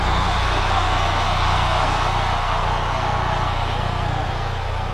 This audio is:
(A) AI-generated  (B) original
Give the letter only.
A